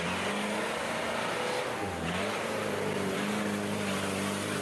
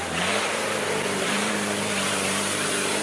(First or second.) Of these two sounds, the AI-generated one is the second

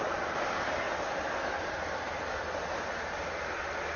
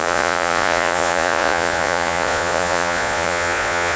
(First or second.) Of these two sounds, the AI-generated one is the second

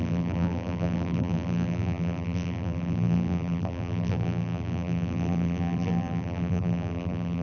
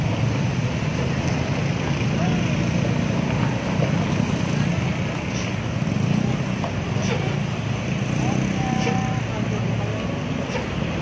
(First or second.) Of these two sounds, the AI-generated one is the first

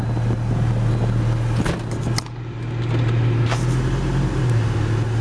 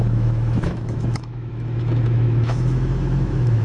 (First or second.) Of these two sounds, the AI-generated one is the second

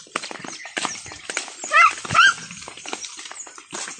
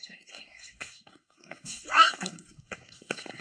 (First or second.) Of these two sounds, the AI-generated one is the second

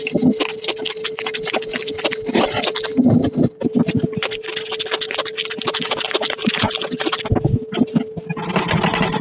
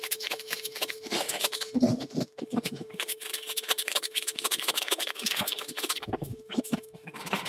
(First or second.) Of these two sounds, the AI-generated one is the second